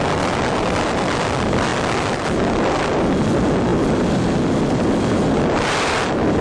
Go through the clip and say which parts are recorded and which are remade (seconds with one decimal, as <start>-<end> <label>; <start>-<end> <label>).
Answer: 0.0-6.4 recorded